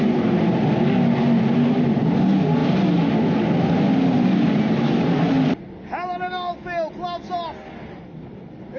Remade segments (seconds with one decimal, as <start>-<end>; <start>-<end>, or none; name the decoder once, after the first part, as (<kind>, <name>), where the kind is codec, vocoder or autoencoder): none